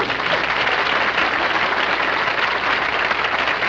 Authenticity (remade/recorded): recorded